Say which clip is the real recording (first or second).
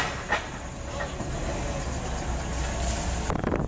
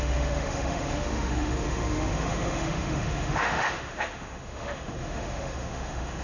first